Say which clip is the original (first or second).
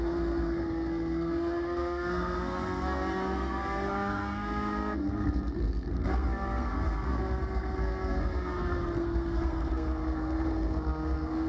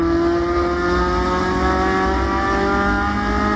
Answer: second